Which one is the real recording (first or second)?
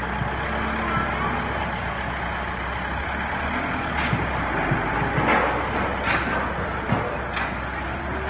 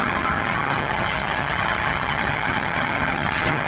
first